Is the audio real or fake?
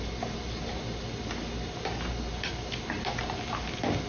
real